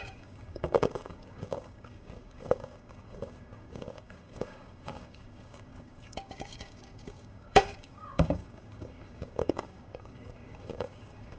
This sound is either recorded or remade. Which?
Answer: remade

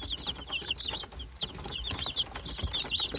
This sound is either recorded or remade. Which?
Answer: recorded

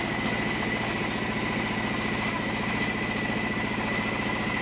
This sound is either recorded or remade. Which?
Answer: recorded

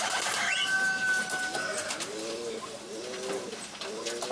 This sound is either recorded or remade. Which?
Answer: recorded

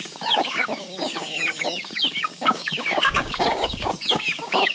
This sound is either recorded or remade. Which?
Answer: remade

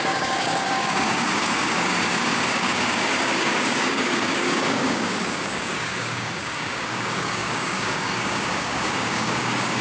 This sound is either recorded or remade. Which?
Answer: remade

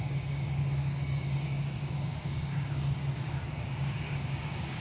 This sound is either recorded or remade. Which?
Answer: remade